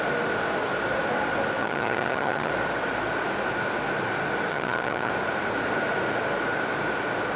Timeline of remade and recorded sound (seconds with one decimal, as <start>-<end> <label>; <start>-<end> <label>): 0.0-1.6 recorded; 1.6-2.5 remade; 2.5-4.5 recorded; 4.5-5.1 remade; 5.1-7.4 recorded